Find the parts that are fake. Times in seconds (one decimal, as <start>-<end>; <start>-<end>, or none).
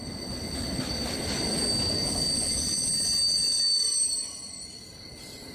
none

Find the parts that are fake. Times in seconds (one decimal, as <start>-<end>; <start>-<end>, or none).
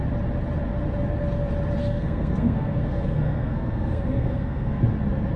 1.8-4.8